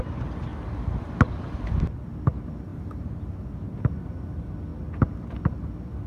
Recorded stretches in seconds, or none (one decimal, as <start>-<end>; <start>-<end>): 0.0-2.7; 3.2-6.1